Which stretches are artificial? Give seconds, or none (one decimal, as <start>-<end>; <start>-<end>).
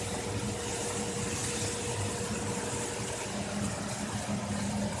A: none